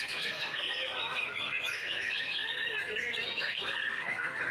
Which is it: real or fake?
fake